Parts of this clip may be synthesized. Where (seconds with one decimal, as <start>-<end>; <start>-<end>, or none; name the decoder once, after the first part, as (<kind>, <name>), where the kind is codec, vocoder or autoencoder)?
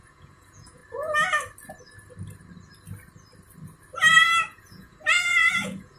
0.0-0.8 (vocoder, Vocos); 4.4-6.0